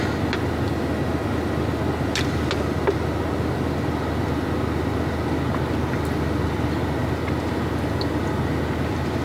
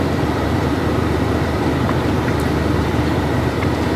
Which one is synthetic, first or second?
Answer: second